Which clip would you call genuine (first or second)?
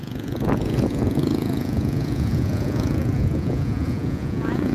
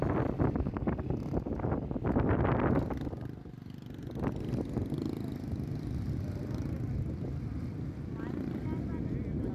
second